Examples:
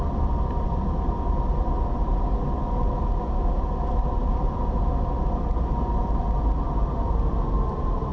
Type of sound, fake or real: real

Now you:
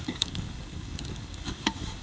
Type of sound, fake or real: fake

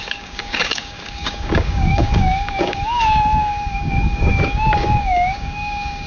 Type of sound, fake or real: fake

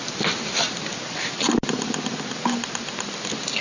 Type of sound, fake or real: real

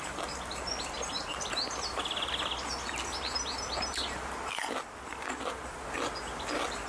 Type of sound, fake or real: real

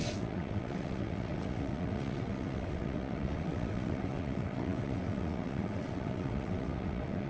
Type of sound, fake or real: fake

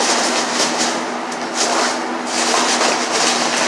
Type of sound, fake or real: real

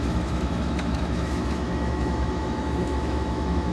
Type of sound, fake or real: fake